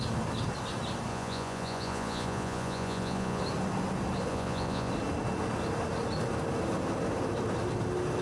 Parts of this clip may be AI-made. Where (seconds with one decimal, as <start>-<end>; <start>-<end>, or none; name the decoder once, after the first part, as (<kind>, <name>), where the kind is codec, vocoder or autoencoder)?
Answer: 1.1-3.4 (vocoder, Vocos); 4.3-4.9